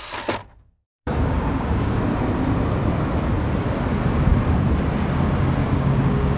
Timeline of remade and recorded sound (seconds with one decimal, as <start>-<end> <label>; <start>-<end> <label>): 0.0-0.8 recorded; 0.8-2.0 remade; 2.0-5.6 recorded; 5.6-6.4 remade